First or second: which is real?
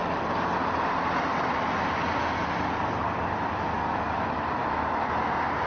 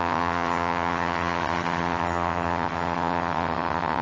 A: first